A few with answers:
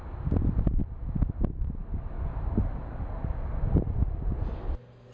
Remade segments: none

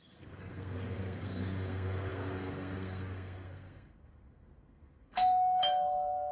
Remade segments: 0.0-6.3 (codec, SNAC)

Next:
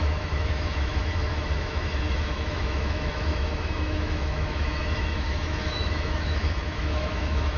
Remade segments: 0.0-7.6 (autoencoder, DAC-VAE)

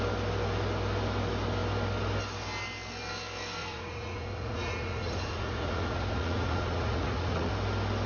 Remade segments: 3.6-7.5 (vocoder, Vocos)

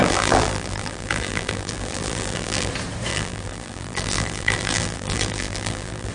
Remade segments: 0.0-2.7 (vocoder, BigVGAN v2); 3.1-6.1